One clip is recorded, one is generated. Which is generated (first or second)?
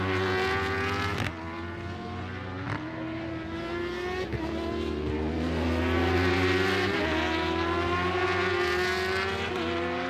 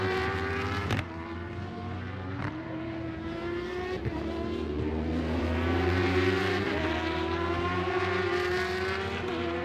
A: second